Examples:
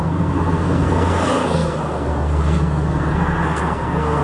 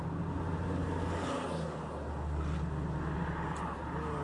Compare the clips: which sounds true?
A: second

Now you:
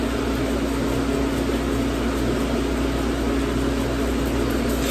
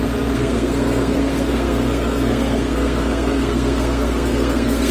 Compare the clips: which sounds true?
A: first